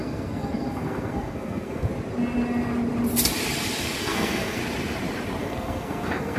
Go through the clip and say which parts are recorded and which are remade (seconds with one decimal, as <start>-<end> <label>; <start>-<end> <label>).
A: 0.0-1.9 remade; 1.9-4.0 recorded; 4.0-4.6 remade; 4.6-5.4 recorded; 5.4-6.4 remade